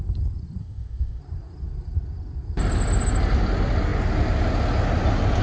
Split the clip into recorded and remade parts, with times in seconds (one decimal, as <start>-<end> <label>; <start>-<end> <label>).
0.0-0.6 recorded; 0.6-1.2 remade; 1.2-5.4 recorded